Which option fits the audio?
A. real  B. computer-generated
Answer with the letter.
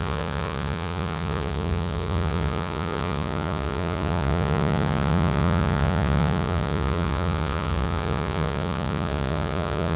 B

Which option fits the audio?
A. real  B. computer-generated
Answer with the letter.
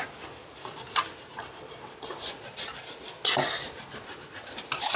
A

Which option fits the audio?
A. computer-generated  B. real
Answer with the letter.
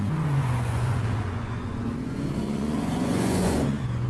A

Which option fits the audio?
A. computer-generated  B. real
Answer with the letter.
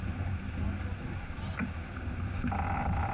B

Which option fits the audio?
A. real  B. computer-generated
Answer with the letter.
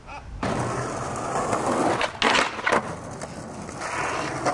A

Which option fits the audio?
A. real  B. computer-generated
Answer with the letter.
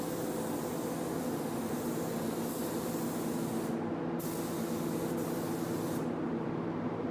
A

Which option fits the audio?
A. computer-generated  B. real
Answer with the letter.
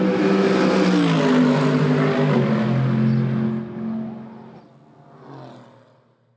B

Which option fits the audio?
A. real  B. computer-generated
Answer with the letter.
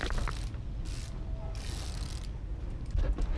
A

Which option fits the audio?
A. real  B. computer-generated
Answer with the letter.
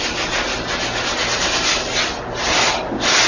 A